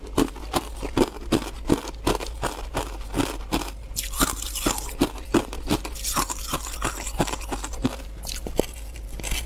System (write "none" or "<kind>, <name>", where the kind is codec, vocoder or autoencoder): none